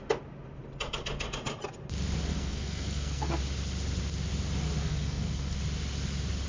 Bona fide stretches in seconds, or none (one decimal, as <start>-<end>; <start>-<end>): 0.0-2.3; 3.4-4.8; 5.6-6.5